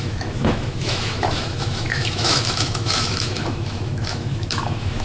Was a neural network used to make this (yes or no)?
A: yes